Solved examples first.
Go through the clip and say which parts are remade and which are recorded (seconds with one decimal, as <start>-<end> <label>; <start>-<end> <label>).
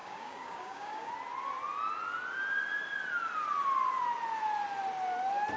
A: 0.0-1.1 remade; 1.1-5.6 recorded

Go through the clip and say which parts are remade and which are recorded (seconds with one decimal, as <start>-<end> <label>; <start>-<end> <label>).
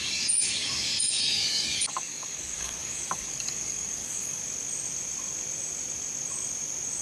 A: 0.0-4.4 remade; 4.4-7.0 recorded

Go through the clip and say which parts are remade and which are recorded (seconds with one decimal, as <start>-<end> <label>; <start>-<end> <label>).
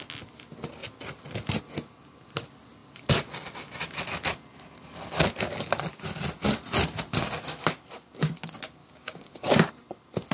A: 0.0-8.8 recorded; 8.8-9.7 remade; 9.7-10.3 recorded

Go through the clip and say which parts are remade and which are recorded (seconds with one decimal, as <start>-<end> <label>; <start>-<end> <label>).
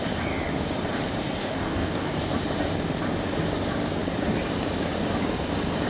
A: 0.0-1.4 recorded; 1.4-2.1 remade; 2.1-5.9 recorded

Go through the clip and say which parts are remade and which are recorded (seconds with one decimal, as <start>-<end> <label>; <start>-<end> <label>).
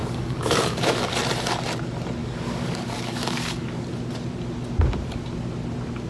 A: 0.0-1.0 remade; 1.0-2.2 recorded; 2.2-3.9 remade; 3.9-6.1 recorded